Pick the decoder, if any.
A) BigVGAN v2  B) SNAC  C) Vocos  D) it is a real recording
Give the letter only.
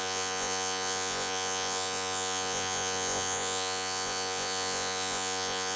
C